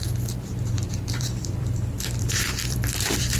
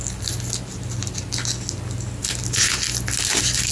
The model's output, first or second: first